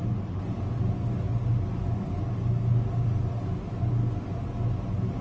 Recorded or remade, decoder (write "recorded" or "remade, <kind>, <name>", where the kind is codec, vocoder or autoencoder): recorded